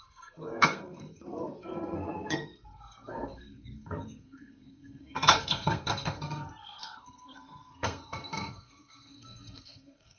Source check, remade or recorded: remade